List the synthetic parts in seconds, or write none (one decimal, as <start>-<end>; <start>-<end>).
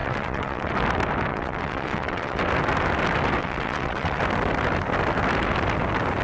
0.0-0.7; 1.3-2.4; 3.4-4.2